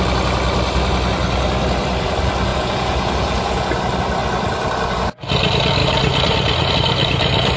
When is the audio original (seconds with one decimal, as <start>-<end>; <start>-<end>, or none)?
0.0-2.5; 3.8-7.6